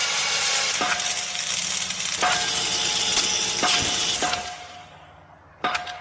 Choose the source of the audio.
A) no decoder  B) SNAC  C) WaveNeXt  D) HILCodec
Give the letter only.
A